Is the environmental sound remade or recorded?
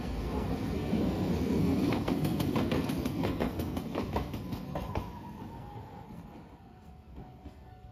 remade